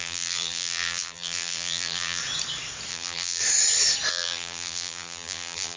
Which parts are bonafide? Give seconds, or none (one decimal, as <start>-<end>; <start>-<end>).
2.2-2.9; 3.4-4.1